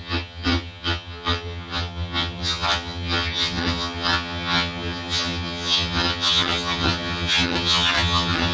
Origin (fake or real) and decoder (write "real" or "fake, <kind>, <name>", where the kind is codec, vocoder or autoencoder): fake, vocoder, HiFi-GAN